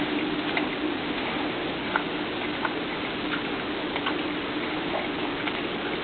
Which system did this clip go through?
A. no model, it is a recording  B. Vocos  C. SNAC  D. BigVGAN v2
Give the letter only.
A